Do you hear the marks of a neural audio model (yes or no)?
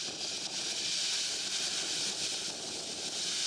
no